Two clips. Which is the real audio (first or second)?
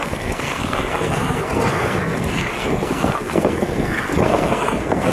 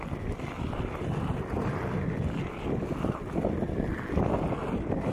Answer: second